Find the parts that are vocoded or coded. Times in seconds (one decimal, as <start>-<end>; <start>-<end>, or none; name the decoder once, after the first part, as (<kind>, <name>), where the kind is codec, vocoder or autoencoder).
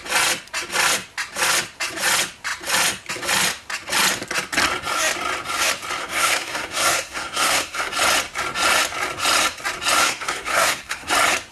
6.0-7.9 (codec, SNAC); 10.0-11.1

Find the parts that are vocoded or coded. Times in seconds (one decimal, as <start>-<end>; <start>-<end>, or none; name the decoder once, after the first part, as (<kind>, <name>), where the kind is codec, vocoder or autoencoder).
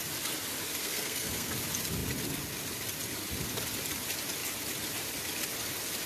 0.8-1.5 (codec, SNAC)